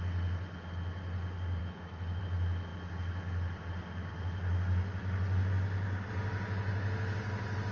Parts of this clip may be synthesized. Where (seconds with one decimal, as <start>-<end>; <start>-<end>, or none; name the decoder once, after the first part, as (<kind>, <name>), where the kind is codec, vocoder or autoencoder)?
1.6-2.2 (autoencoder, DAC-VAE)